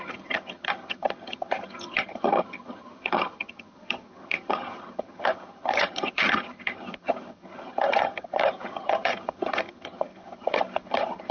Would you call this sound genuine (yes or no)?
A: no